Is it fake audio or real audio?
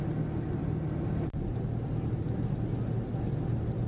real